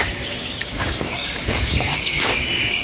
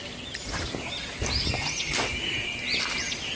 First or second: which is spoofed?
first